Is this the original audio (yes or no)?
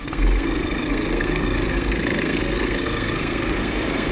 no